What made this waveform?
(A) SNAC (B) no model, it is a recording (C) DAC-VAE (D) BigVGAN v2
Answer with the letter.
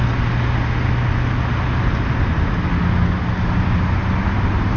B